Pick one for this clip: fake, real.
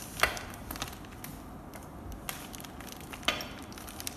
real